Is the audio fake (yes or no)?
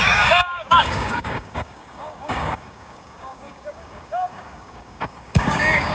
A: yes